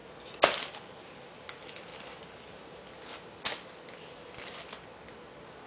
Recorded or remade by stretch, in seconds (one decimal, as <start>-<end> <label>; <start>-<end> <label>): 0.0-5.7 recorded